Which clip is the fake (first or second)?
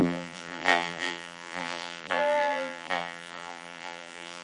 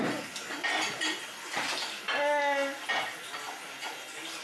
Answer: first